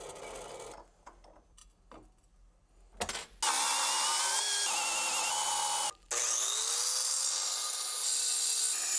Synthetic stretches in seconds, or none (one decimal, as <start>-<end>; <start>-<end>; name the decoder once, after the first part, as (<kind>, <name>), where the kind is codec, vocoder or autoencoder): none